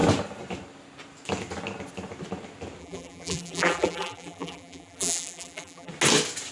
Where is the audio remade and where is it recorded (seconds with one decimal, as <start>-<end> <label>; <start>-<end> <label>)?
0.0-2.8 recorded; 2.8-5.9 remade; 5.9-6.5 recorded